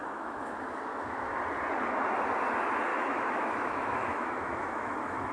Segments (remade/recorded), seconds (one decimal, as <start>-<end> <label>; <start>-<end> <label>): 0.0-1.4 remade; 1.4-2.9 recorded; 2.9-5.3 remade